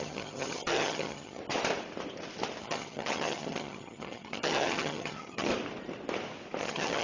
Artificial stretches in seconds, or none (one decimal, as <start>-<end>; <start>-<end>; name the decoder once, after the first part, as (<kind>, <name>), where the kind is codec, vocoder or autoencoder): 0.0-1.4 (vocoder, HiFi-GAN); 2.6-5.5; 6.6-7.0